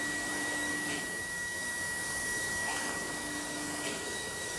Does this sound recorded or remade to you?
remade